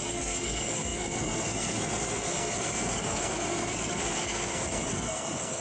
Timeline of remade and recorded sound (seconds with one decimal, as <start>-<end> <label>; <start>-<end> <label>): 0.0-5.6 remade